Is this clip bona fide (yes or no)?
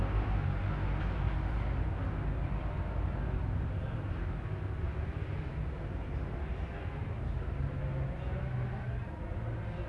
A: yes